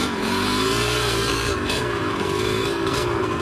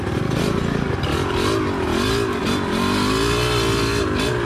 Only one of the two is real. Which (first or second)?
second